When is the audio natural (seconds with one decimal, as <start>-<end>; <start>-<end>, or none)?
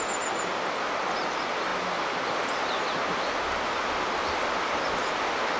0.0-5.6